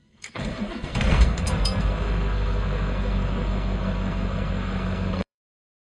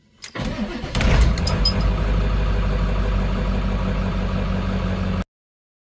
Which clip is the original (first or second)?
second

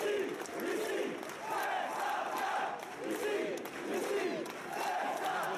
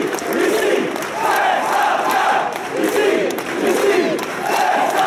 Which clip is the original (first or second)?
first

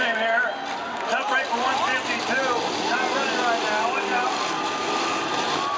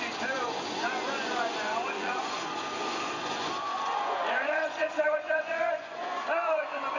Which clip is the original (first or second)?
first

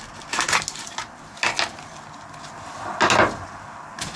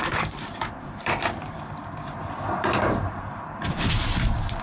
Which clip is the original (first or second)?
first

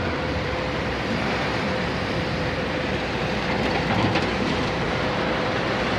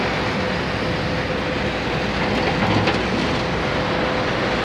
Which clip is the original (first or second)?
second